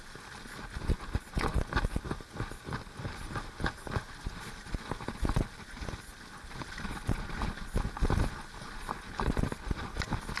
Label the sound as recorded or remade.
recorded